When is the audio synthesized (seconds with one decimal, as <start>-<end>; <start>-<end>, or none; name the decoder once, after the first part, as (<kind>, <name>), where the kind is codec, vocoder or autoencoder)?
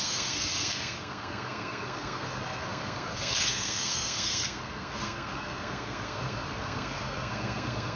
0.0-8.0 (codec, SNAC)